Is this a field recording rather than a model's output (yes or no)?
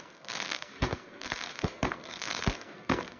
no